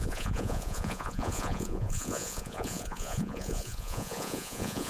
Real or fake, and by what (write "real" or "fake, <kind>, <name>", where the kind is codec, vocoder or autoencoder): fake, vocoder, Vocos